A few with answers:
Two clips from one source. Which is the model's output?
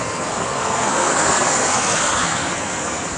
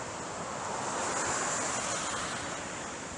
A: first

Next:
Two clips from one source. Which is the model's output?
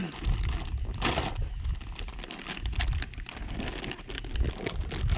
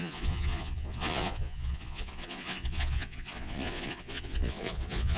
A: second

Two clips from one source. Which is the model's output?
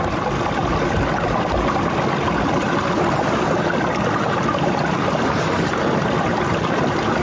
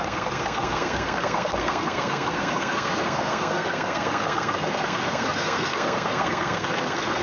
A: second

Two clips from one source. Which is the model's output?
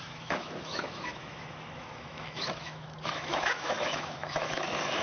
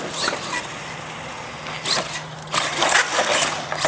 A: first